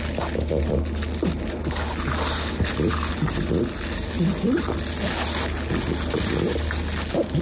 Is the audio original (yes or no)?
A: yes